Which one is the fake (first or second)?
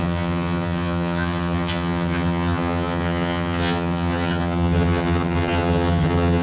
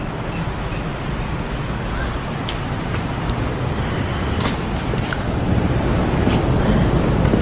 first